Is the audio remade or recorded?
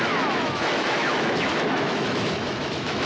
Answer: remade